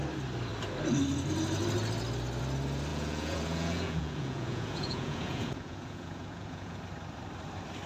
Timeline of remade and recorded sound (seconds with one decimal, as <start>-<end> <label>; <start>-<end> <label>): 0.0-2.9 recorded; 2.9-6.8 remade; 6.8-7.9 recorded